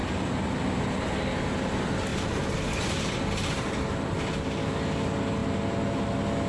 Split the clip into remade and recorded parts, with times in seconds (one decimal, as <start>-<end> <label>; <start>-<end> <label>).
0.0-6.5 recorded